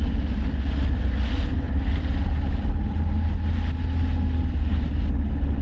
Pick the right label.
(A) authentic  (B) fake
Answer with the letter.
A